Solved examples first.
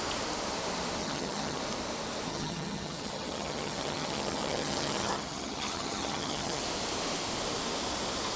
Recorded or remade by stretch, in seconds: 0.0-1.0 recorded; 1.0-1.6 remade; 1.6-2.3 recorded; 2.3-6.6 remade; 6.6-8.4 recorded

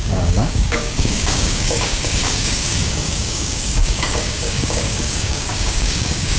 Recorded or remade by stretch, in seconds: 0.0-6.4 remade

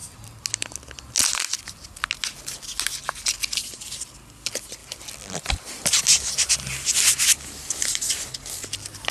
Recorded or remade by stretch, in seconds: 0.0-9.1 recorded